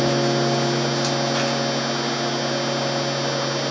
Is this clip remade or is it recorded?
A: recorded